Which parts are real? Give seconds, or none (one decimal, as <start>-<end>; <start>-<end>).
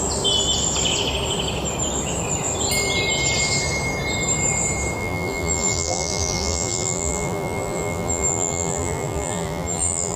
0.0-5.0